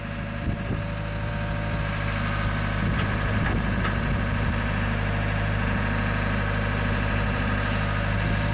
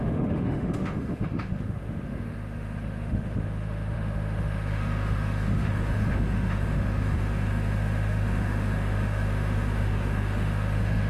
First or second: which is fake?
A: second